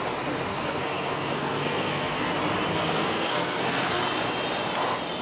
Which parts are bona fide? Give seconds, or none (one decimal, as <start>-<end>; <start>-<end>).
0.0-0.5; 2.3-2.7; 4.0-5.2